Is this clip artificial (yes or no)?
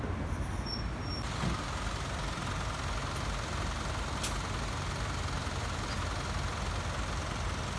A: no